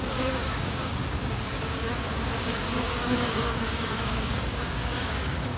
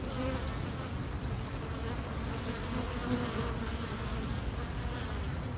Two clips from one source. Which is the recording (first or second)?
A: second